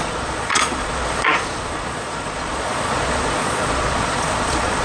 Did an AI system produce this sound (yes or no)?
yes